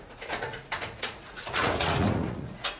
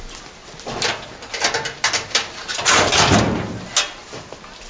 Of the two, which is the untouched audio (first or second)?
second